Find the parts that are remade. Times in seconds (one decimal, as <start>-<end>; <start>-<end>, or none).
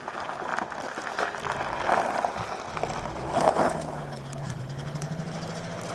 3.3-5.2